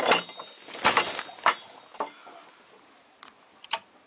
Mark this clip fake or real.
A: real